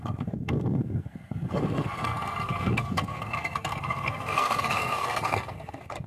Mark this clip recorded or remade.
remade